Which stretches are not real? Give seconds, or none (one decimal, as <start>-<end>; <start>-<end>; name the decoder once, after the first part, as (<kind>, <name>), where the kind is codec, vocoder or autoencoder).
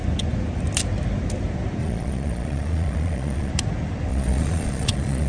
1.8-3.5 (vocoder, Vocos); 4.1-5.3